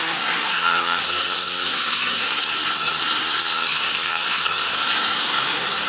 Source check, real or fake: fake